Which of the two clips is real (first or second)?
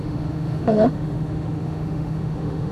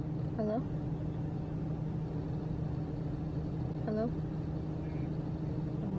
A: second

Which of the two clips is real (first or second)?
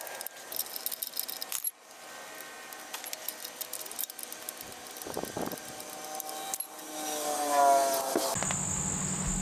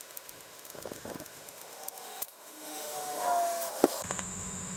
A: first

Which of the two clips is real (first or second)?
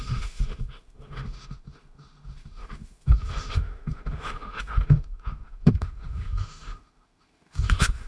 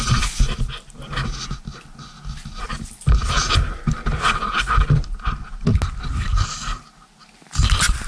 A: second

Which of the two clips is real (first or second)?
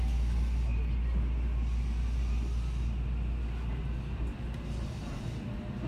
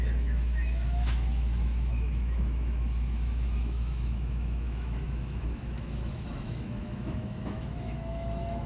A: first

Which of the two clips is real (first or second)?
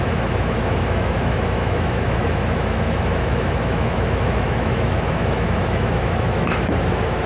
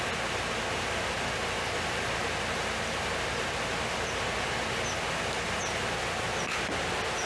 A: second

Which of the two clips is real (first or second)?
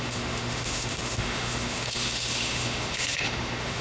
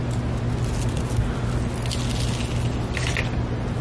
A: second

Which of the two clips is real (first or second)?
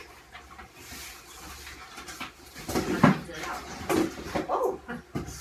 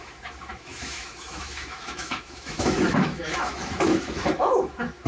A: first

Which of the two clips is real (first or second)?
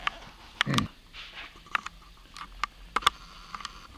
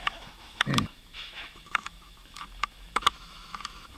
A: first